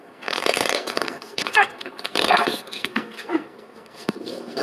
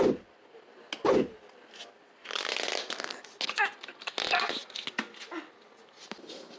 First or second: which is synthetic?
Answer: first